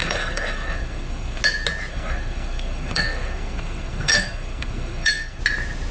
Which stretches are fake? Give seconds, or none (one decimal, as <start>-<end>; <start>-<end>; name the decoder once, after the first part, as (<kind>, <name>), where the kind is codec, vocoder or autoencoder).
0.0-1.4 (codec, SNAC); 1.9-5.4